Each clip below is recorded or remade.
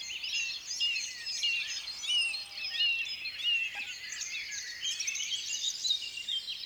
recorded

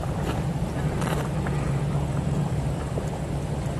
remade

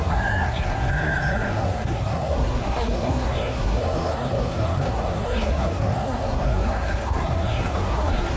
remade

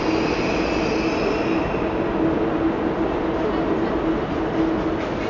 recorded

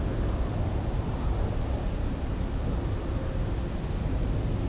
recorded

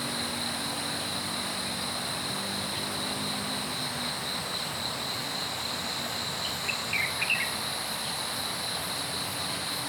recorded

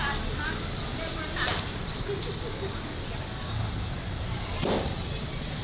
recorded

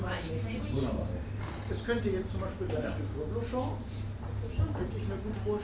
recorded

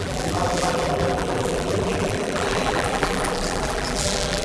remade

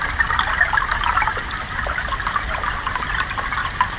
recorded